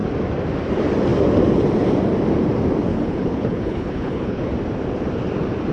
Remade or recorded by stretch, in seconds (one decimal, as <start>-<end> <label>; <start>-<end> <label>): 0.0-2.9 recorded; 2.9-4.5 remade; 4.5-5.7 recorded